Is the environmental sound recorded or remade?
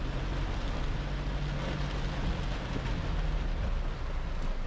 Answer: recorded